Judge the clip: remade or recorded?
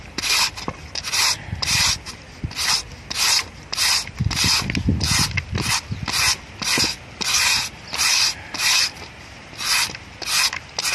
recorded